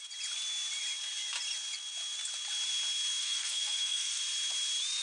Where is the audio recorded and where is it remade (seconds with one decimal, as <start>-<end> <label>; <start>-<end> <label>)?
0.0-3.2 recorded; 3.2-4.2 remade; 4.2-5.0 recorded

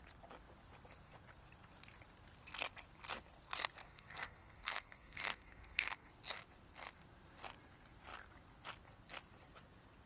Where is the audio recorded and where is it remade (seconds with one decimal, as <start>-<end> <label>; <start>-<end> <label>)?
0.0-3.8 recorded; 3.8-6.1 remade; 6.1-10.1 recorded